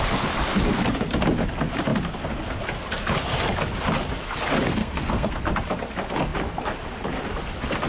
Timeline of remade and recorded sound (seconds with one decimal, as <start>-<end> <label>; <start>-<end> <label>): 0.0-4.8 recorded; 4.8-5.4 remade; 5.4-7.9 recorded